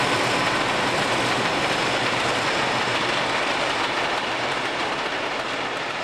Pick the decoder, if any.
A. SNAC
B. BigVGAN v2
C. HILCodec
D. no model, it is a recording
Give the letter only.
B